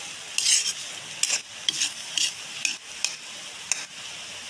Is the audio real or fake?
real